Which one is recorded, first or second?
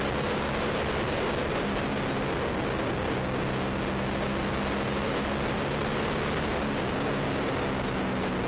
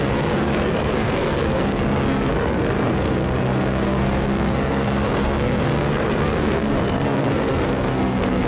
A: first